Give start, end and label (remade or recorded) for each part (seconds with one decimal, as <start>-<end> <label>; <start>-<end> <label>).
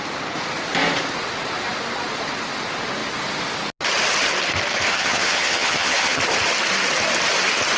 0.0-4.9 recorded; 4.9-6.2 remade; 6.2-7.8 recorded